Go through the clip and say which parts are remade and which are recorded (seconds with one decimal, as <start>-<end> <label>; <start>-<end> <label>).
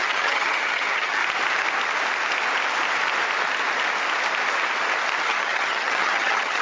0.0-1.2 remade; 1.2-5.2 recorded; 5.2-6.6 remade